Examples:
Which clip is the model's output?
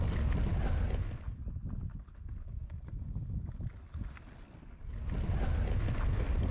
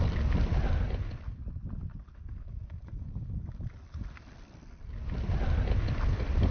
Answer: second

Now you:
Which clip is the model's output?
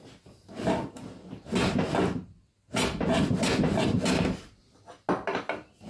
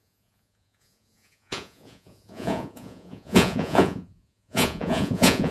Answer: second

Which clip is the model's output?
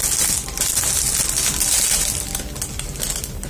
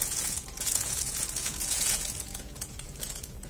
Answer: second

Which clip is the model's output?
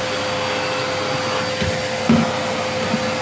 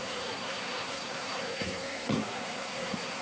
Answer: second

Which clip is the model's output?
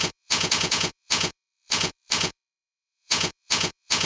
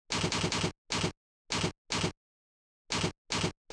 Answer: first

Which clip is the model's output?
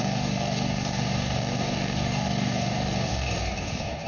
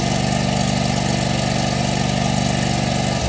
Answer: first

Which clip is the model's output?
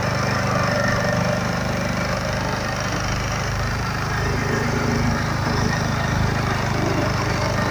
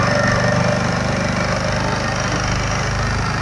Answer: first